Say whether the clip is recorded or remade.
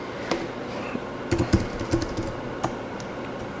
recorded